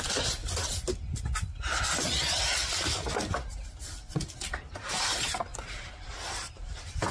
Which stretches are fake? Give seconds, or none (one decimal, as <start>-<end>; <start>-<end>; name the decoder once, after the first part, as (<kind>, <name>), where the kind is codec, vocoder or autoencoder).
0.0-0.4 (vocoder, BigVGAN v2); 4.7-5.5; 6.5-7.1